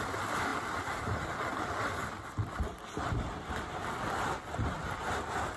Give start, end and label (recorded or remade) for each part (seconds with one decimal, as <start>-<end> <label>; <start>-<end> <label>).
0.0-5.6 recorded